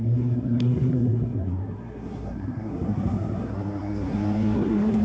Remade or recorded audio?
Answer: remade